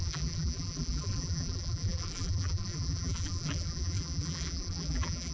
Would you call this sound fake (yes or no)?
yes